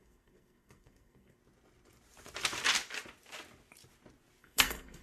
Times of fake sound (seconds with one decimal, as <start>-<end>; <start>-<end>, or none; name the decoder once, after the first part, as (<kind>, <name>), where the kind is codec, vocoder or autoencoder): 0.0-1.4 (codec, SNAC); 4.4-5.0